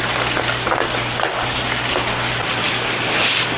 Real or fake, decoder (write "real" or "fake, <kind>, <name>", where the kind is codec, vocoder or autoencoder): real